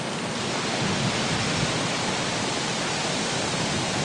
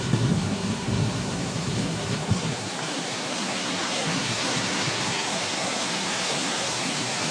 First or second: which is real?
first